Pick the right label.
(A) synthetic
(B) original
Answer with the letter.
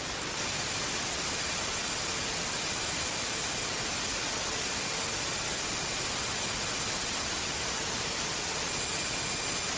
B